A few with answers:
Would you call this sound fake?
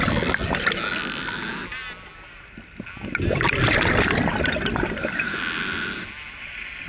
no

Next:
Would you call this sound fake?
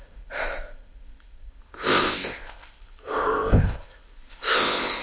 yes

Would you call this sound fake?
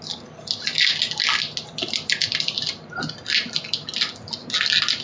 no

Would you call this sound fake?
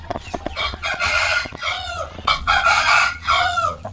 yes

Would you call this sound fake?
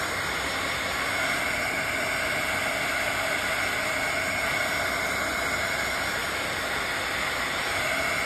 no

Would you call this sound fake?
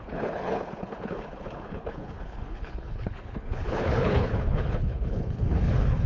yes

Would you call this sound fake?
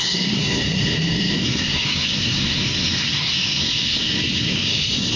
yes